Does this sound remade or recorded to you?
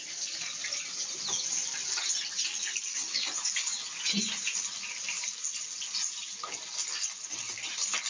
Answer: recorded